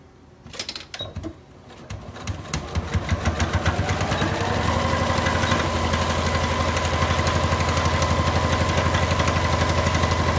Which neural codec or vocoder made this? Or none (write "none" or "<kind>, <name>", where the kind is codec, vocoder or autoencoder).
none